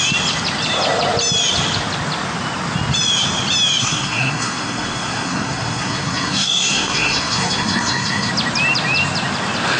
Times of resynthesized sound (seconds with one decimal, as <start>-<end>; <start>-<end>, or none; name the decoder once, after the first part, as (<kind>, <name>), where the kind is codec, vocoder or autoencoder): 3.8-8.3 (codec, SNAC)